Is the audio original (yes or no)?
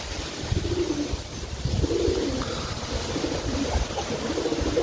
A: yes